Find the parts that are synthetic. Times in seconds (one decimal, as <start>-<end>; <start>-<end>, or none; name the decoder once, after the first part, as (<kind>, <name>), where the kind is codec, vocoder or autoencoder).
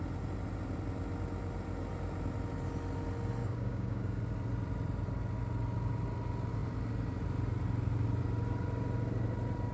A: 3.4-4.2 (codec, DAC)